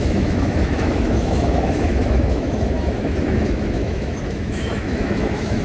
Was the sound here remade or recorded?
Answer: remade